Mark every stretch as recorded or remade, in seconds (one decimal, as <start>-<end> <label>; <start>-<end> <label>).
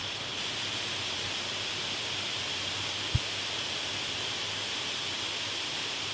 0.0-6.1 recorded